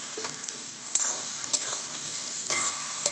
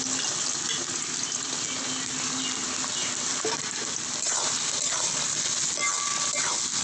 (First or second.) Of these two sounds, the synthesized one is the first